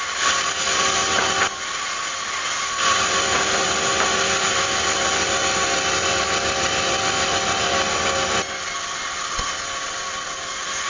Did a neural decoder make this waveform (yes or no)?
no